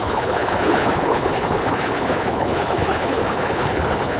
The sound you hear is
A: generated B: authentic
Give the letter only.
A